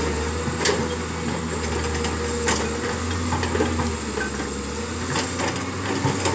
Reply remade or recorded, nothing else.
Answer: recorded